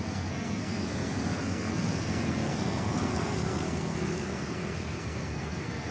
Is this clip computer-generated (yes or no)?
yes